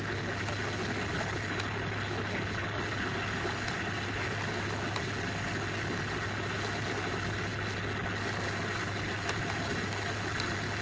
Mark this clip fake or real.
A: real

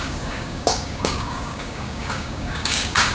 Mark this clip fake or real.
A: fake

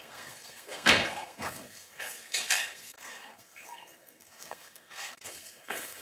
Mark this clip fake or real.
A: fake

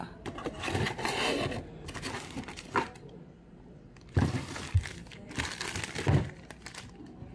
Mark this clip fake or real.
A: real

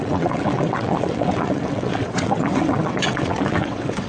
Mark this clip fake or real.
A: fake